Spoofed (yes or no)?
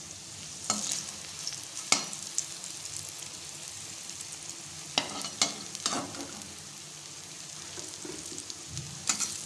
no